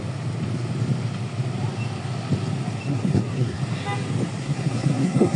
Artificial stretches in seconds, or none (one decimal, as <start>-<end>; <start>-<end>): 2.9-3.6; 4.4-5.4